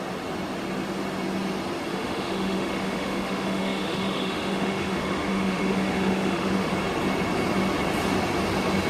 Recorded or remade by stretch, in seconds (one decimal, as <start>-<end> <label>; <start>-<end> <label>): 0.0-1.9 recorded; 1.9-6.7 remade; 6.7-8.9 recorded